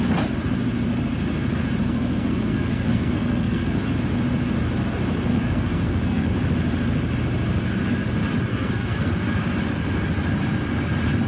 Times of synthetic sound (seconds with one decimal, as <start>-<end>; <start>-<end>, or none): 1.8-3.8; 5.3-6.3; 8.5-9.1